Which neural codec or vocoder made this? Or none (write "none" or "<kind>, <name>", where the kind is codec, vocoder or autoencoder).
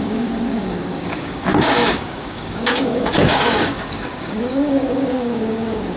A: codec, DAC